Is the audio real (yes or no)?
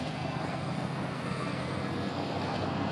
no